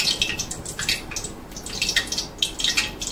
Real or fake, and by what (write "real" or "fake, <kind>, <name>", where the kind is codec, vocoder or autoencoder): real